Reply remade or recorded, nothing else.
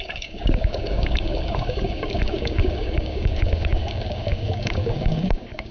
remade